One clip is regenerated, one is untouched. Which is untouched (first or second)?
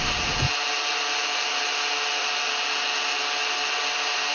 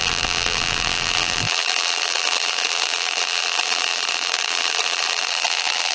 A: first